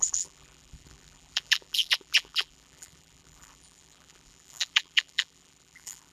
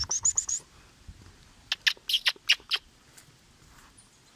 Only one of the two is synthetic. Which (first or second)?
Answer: first